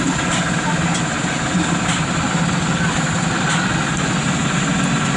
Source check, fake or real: real